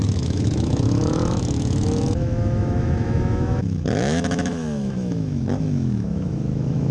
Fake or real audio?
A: fake